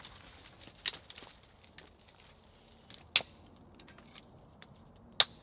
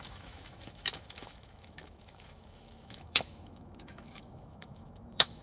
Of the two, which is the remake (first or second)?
second